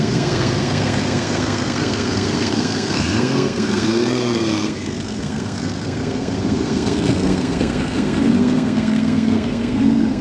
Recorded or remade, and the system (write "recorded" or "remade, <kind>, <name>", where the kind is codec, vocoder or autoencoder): remade, codec, SNAC